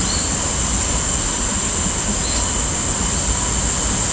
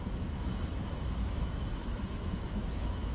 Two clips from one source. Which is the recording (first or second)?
first